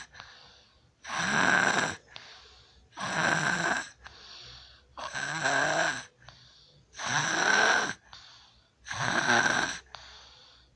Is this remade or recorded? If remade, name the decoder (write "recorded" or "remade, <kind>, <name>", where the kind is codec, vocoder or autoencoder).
recorded